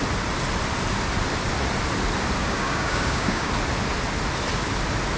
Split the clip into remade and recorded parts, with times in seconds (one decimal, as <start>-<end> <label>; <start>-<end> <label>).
0.0-2.4 recorded; 2.4-3.5 remade; 3.5-5.2 recorded